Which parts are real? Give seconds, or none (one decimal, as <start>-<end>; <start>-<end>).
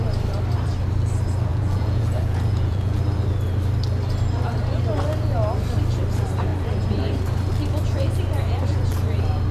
0.0-1.5; 3.0-9.5